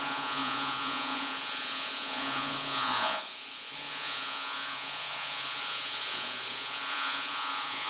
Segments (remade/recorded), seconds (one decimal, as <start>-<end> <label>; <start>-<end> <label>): 0.0-7.9 remade